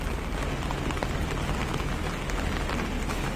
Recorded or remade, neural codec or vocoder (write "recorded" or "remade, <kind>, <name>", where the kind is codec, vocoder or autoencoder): recorded